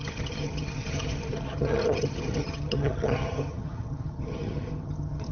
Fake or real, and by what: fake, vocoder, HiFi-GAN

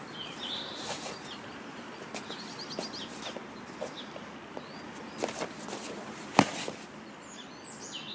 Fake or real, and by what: real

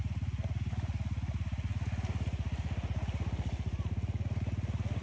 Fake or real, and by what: real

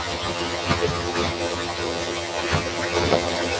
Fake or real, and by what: fake, vocoder, HiFi-GAN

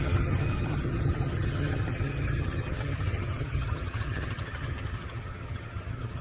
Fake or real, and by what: fake, vocoder, HiFi-GAN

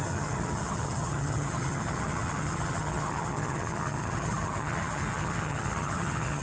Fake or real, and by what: fake, vocoder, HiFi-GAN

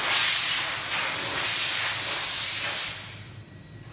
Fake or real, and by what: real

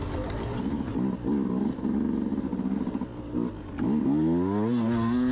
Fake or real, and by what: real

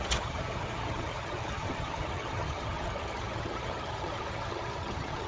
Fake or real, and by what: fake, vocoder, HiFi-GAN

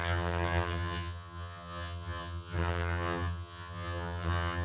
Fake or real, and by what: fake, vocoder, HiFi-GAN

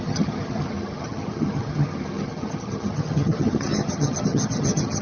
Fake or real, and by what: fake, vocoder, HiFi-GAN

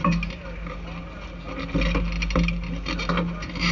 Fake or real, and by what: real